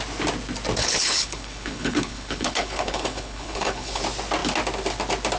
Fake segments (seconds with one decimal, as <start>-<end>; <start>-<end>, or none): 0.8-4.0